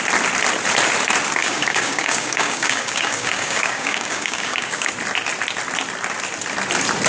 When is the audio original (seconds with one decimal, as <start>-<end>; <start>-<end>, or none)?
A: 0.0-1.4; 4.9-7.1